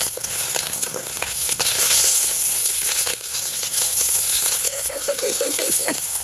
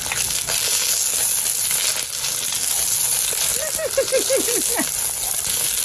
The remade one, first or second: first